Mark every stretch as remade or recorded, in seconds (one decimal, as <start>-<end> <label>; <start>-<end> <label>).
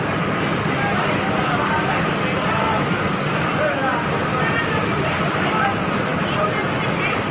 0.0-7.3 recorded